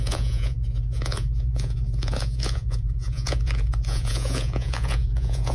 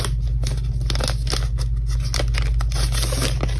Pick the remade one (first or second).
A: first